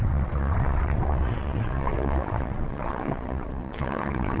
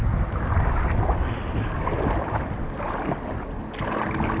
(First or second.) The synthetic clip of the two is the first